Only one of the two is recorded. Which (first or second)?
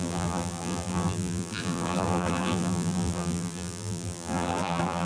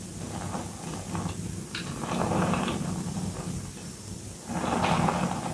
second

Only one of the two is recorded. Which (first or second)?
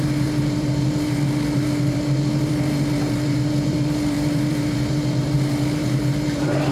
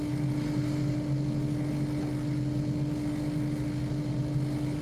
second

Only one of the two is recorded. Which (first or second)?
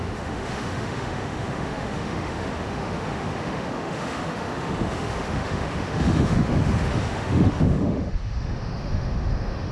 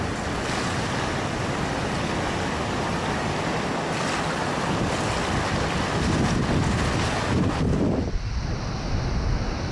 second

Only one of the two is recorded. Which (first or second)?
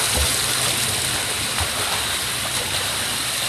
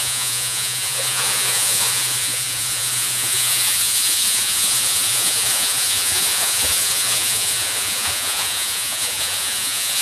first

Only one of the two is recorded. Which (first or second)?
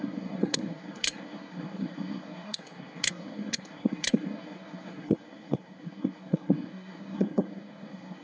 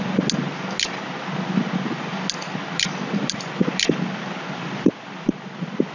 second